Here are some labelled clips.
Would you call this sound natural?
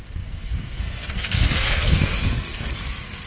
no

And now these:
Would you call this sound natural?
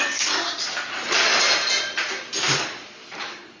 yes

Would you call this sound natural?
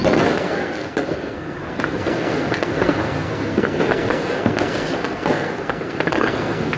no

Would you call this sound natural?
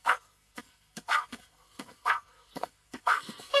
no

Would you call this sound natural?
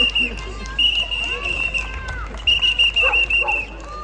yes